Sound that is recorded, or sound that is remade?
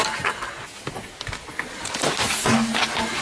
recorded